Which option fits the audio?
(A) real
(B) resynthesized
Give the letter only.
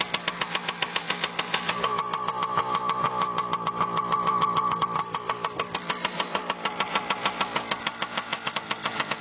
A